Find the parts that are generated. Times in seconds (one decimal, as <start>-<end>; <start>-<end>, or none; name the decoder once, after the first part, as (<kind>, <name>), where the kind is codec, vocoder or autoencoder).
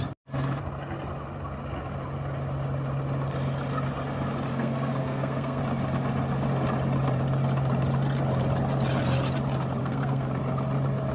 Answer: 4.5-5.6 (codec, SNAC); 9.8-10.4